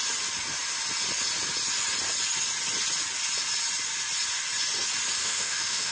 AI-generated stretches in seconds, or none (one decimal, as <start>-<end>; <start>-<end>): 5.2-5.9